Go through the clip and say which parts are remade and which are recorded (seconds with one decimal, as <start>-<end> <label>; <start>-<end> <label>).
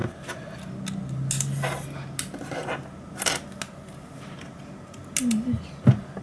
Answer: 0.0-6.2 recorded